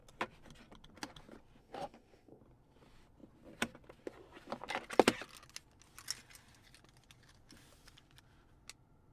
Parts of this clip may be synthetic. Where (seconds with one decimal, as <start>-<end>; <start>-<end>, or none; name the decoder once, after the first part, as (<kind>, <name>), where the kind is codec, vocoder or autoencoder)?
1.6-2.4 (codec, DAC)